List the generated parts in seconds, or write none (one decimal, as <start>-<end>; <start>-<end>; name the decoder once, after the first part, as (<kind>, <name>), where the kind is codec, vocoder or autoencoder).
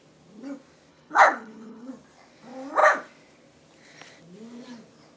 0.9-1.9 (codec, HILCodec)